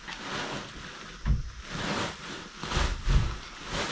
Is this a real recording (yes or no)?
yes